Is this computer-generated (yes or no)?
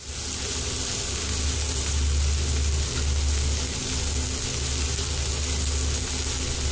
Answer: no